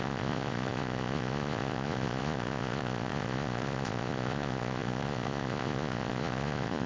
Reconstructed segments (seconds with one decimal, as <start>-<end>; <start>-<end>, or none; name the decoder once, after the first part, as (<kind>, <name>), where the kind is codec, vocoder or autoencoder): 0.0-6.9 (vocoder, Vocos)